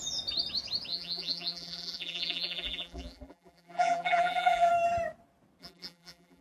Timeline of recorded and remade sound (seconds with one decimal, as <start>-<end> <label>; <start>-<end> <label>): 0.0-0.9 recorded; 0.9-4.7 remade; 4.7-5.6 recorded; 5.6-6.4 remade